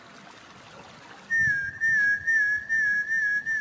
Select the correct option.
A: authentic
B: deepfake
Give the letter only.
A